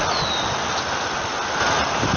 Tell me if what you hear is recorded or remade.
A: recorded